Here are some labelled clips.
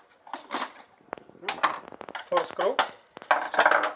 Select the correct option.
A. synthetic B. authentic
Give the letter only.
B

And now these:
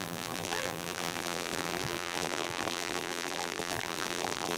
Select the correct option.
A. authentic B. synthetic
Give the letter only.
B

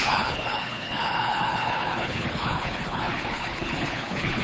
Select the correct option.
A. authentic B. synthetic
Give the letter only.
B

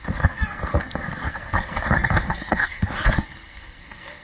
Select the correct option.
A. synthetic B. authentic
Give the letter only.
A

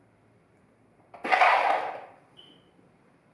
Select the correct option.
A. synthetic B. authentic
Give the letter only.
B